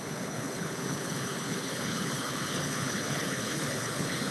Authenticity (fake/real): fake